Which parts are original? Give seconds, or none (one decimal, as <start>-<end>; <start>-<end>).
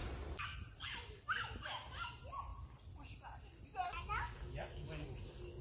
0.8-2.5; 3.6-5.6